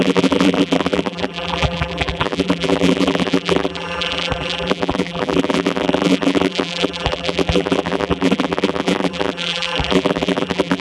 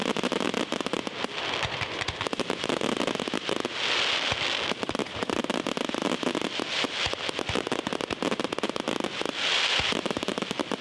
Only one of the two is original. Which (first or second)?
second